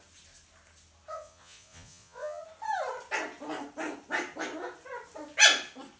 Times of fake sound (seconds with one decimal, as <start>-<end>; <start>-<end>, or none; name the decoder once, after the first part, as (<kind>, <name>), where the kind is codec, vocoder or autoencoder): 1.1-2.4 (vocoder, Vocos)